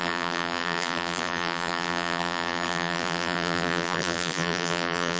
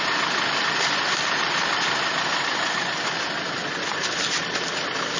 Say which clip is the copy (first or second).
first